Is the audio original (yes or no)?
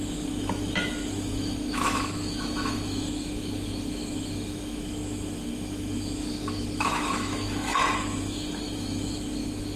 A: no